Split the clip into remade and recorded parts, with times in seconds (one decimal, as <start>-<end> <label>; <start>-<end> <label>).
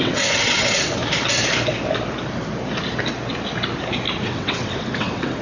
0.0-1.0 remade; 1.0-4.2 recorded; 4.2-5.4 remade